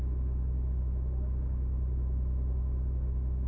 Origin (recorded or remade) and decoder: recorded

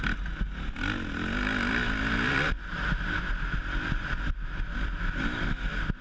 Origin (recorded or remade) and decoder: recorded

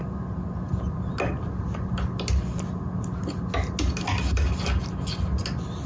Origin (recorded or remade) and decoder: recorded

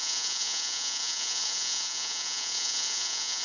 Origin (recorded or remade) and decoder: remade, vocoder, Vocos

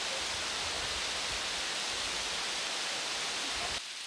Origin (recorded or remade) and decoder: recorded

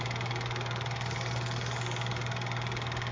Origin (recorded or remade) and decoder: remade, codec, DAC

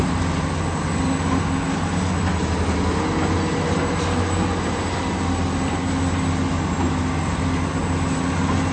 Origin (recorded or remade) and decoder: recorded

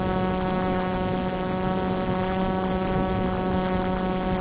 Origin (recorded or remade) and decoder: recorded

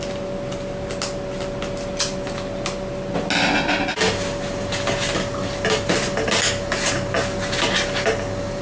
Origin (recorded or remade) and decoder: recorded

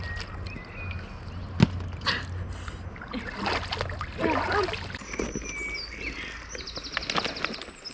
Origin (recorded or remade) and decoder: recorded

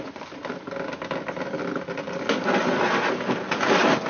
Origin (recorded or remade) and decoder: recorded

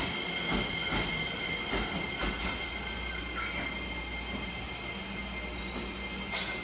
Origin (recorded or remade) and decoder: recorded